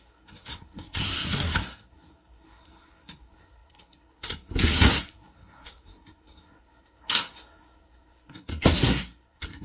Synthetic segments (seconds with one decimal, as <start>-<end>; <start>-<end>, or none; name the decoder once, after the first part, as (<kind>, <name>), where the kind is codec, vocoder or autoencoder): 0.0-9.6 (codec, SNAC)